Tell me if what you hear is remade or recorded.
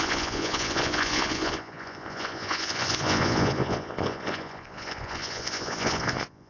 remade